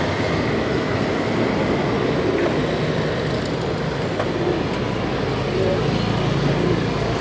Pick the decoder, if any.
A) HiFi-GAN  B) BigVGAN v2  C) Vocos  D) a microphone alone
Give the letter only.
D